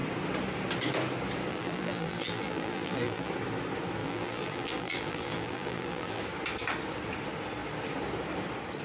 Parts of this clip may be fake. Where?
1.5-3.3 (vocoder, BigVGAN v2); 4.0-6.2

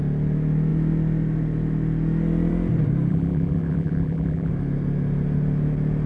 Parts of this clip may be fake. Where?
3.1-4.5 (vocoder, BigVGAN v2)

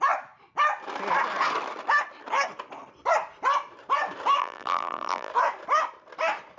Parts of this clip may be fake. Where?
4.4-5.3 (vocoder, BigVGAN v2)

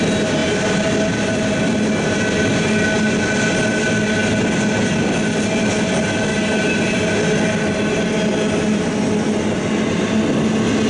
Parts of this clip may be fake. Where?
none

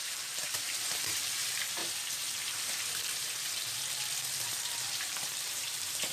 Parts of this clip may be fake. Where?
0.0-1.8 (vocoder, BigVGAN v2); 4.5-6.1

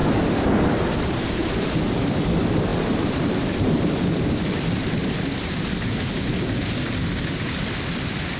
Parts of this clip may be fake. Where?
0.0-5.0 (vocoder, BigVGAN v2)

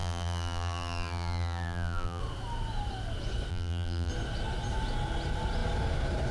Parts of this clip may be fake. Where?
0.0-2.2 (vocoder, BigVGAN v2); 3.5-4.1

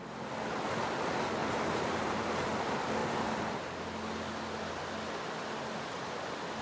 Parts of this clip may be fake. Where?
1.4-2.2 (vocoder, BigVGAN v2); 3.0-3.6